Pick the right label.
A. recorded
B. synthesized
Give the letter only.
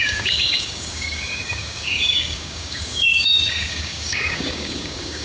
B